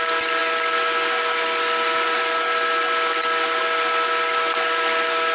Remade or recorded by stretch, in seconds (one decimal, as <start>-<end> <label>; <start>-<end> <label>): 0.0-5.3 recorded